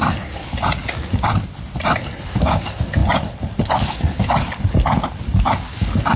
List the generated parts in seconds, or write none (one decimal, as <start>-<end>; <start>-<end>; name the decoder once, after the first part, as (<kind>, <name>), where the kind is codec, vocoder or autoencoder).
none